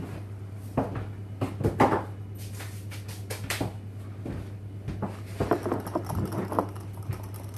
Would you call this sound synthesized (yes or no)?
no